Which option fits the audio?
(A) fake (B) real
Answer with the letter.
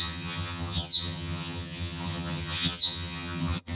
A